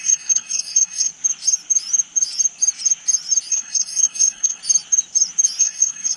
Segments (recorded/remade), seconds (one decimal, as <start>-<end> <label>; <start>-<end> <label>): 0.0-1.1 remade; 1.1-3.5 recorded; 3.5-4.6 remade; 4.6-5.6 recorded; 5.6-6.2 remade